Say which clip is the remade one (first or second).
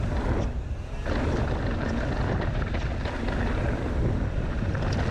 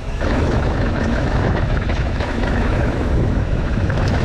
second